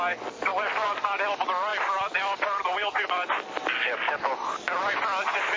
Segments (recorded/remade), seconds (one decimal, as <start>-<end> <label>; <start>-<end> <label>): 0.0-0.5 recorded; 0.5-1.0 remade; 1.0-5.6 recorded